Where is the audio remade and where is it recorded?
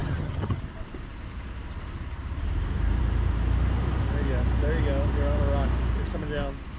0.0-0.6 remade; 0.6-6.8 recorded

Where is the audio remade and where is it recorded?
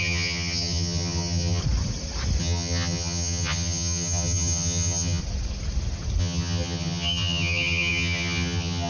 0.0-1.6 remade; 1.6-2.4 recorded; 2.4-5.2 remade; 5.2-6.2 recorded; 6.2-8.9 remade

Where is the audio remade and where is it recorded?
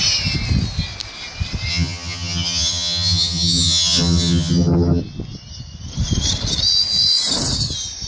0.0-1.7 recorded; 1.7-5.0 remade; 5.0-8.1 recorded